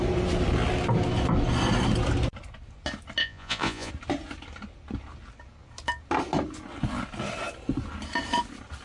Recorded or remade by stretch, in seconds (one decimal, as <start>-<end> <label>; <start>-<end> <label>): 0.0-3.2 recorded; 3.2-3.9 remade; 3.9-8.8 recorded